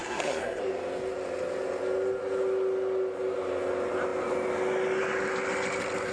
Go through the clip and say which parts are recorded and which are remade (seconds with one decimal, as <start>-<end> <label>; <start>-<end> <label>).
0.0-0.6 remade; 0.6-6.1 recorded